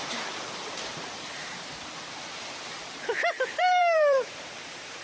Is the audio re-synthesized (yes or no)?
yes